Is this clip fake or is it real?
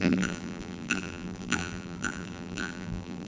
fake